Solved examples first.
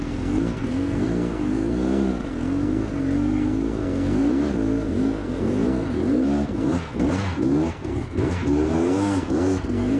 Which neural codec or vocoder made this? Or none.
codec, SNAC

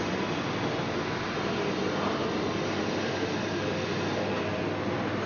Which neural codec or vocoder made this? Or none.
none